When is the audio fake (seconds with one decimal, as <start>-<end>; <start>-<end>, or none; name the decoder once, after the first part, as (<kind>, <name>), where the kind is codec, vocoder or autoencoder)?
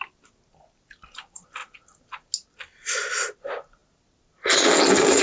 none